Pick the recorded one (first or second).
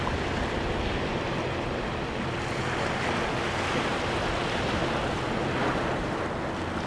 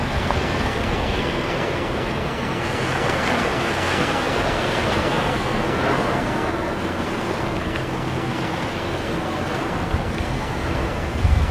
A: first